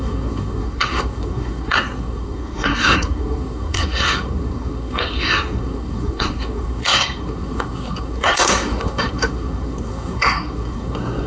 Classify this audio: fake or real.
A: fake